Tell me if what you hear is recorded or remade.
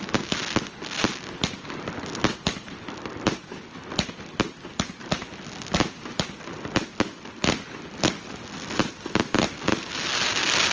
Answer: recorded